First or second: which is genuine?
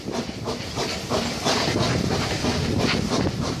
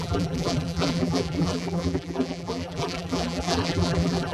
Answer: first